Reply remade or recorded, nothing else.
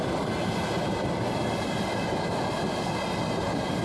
recorded